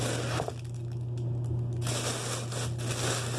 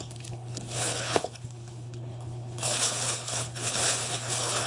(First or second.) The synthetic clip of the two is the second